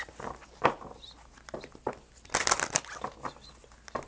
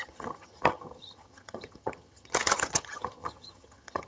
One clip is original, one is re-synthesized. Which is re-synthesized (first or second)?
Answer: second